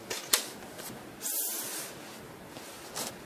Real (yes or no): yes